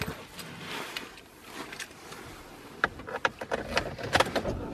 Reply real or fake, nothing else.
real